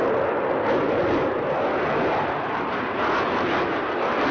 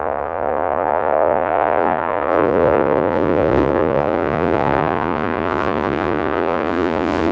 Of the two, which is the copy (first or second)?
second